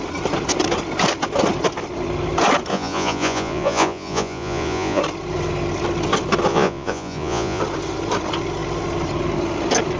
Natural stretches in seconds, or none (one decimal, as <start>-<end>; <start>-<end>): 0.0-2.7; 5.0-6.5; 7.6-10.0